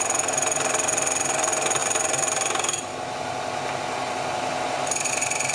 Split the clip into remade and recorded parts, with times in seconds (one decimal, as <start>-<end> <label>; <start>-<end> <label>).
0.0-5.5 recorded

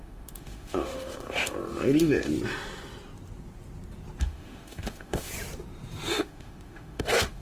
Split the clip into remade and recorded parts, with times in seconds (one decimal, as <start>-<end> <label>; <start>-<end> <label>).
0.0-2.3 remade; 2.3-4.2 recorded; 4.2-5.3 remade; 5.3-6.1 recorded; 6.1-7.4 remade

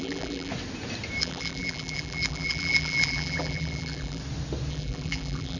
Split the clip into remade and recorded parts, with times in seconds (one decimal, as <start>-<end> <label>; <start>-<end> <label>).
0.0-0.5 remade; 0.5-1.2 recorded; 1.2-4.2 remade; 4.2-4.7 recorded; 4.7-5.6 remade

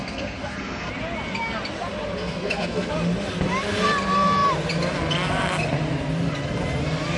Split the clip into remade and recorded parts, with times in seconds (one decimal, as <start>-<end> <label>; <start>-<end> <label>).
0.0-0.9 remade; 0.9-2.2 recorded; 2.2-2.9 remade; 2.9-7.2 recorded

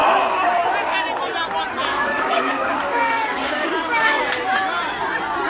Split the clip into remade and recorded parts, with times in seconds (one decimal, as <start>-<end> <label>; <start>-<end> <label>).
0.0-1.9 recorded; 1.9-4.2 remade; 4.2-5.5 recorded